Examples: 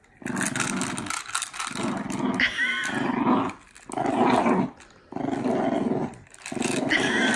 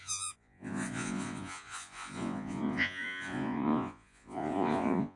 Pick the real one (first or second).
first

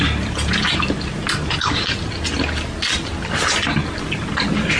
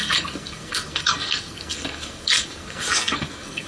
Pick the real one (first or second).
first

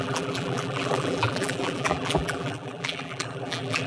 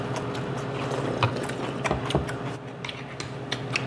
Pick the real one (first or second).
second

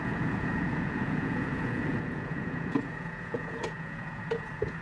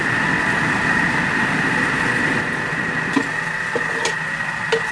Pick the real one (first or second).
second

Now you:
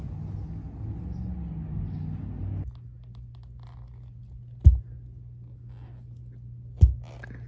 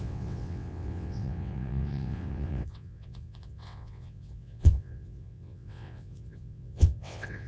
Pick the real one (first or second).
first